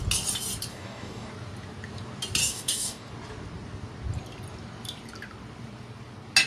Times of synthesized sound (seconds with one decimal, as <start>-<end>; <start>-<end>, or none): 0.7-1.3; 2.4-3.1